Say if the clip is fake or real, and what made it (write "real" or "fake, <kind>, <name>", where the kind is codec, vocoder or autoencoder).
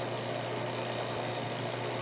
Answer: real